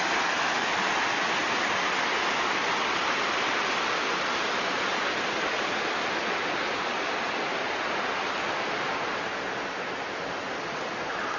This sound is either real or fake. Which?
real